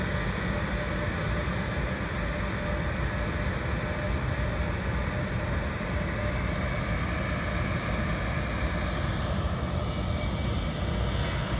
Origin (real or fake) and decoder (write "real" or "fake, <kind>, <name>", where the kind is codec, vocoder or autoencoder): real